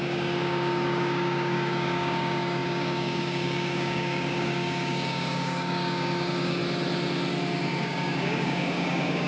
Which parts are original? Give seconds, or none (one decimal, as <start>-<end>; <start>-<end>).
6.6-7.8